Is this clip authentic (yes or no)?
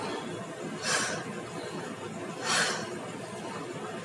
yes